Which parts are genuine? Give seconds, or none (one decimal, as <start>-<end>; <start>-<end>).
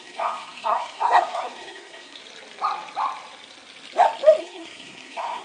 2.2-4.4